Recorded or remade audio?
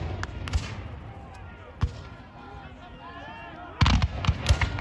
recorded